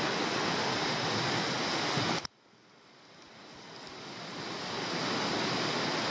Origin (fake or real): real